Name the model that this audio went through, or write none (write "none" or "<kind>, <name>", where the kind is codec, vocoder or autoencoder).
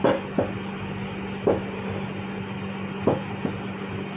none